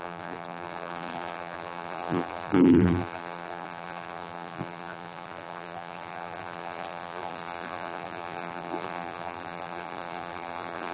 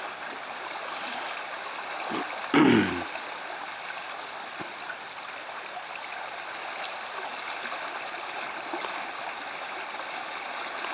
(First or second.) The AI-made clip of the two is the first